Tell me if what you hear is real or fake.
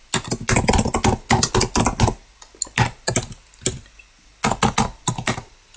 real